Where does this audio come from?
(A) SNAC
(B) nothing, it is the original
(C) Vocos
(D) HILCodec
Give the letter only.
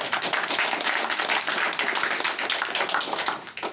B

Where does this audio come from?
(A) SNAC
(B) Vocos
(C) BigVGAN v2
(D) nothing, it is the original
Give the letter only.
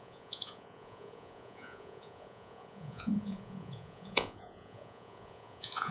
B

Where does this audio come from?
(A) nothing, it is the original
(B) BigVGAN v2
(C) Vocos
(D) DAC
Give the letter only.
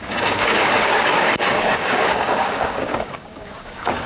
D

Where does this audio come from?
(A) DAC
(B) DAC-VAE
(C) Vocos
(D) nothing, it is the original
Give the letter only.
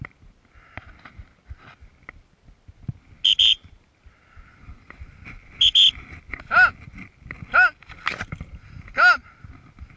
D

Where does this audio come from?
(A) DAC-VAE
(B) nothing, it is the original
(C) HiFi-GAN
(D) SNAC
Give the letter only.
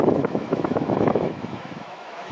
A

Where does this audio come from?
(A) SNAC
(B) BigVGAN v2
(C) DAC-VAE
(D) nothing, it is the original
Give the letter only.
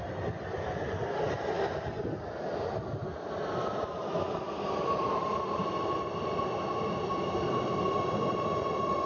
D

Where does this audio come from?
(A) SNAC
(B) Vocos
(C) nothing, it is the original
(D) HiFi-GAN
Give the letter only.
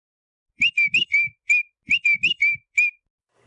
C